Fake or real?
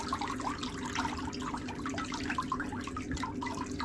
real